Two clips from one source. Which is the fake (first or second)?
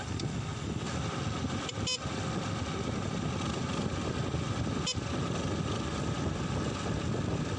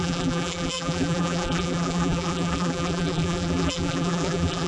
second